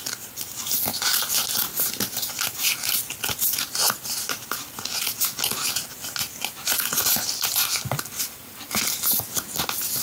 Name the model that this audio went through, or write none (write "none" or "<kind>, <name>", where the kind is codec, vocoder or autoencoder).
none